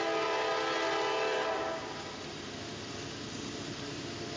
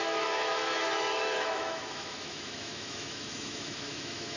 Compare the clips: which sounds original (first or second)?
first